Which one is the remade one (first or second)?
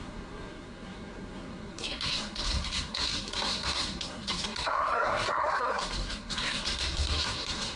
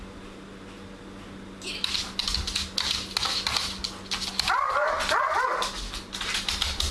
first